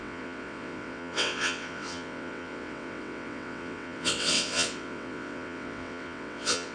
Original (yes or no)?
no